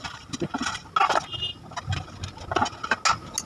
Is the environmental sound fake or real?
real